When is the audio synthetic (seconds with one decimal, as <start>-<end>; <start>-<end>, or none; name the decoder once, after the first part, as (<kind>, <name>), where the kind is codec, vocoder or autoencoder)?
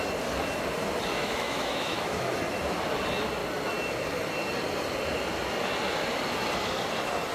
1.1-2.4 (autoencoder, DAC-VAE)